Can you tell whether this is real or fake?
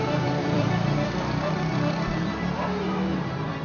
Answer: fake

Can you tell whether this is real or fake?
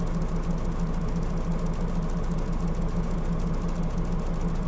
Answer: real